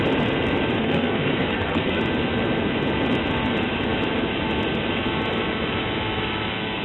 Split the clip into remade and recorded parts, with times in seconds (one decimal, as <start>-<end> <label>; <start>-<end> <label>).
0.0-0.8 recorded; 0.8-2.0 remade; 2.0-6.8 recorded